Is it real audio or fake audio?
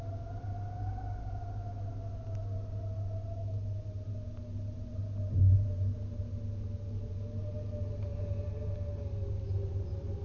real